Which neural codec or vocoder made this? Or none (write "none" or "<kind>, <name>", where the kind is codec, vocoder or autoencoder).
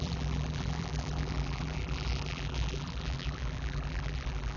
vocoder, BigVGAN v2